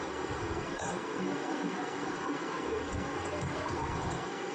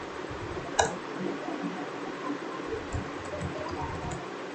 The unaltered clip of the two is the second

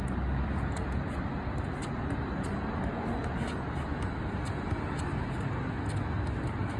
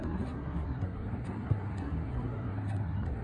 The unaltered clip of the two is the first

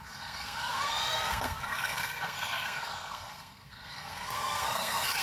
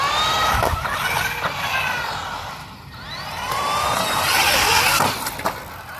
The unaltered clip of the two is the second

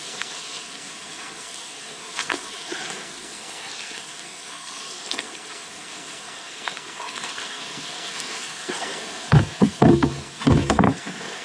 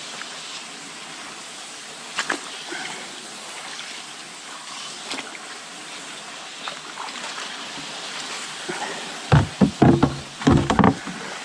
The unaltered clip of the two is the second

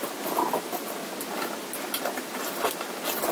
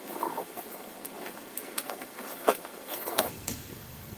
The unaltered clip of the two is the first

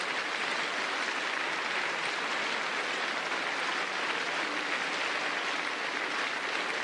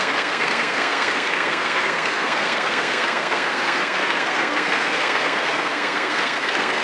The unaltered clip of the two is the first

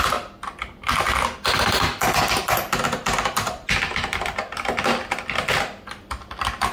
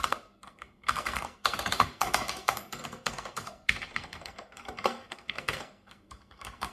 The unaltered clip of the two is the first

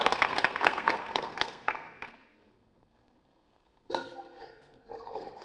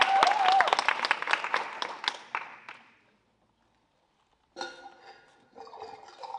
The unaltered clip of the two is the second